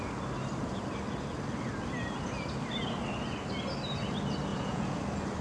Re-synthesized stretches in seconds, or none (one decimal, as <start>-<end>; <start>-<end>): 4.5-5.0